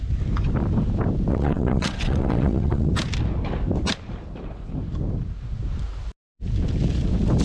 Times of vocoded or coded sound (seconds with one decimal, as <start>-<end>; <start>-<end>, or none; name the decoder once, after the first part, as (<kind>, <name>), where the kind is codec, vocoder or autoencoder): 1.3-2.9 (vocoder, WaveNeXt)